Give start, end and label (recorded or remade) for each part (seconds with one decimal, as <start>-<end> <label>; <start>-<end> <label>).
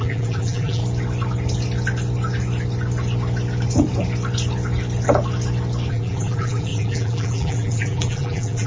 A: 0.0-0.8 remade; 0.8-5.9 recorded; 5.9-8.7 remade